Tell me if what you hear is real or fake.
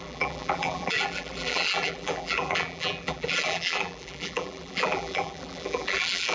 fake